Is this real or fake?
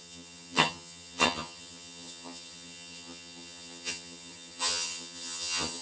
fake